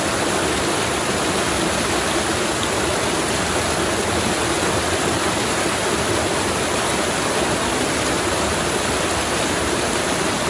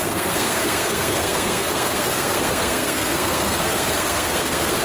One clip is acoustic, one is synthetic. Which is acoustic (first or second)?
first